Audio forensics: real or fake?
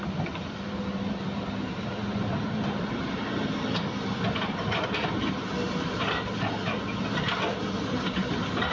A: fake